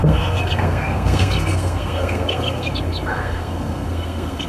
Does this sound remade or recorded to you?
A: remade